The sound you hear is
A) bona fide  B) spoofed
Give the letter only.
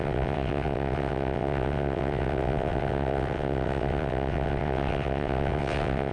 B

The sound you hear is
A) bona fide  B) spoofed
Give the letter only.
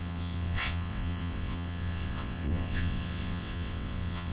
B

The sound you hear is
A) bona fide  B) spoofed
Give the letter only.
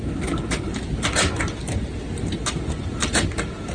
A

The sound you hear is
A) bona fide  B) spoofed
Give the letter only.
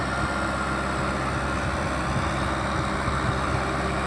A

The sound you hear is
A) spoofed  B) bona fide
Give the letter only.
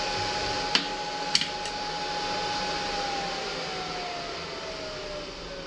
B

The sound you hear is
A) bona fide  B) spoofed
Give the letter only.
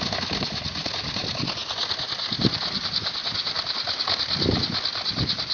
A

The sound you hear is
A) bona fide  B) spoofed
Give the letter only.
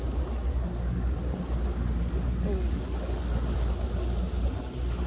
A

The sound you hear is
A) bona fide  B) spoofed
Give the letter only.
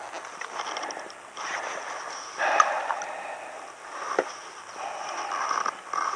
A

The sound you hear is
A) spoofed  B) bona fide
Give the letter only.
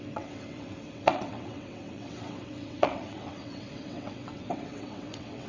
A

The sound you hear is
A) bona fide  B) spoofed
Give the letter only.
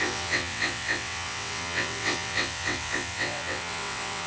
B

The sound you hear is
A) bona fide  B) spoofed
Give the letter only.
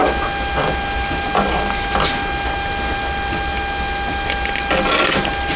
A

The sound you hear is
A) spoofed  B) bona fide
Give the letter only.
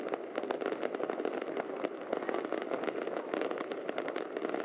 B